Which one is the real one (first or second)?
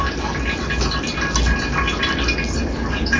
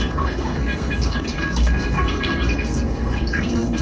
first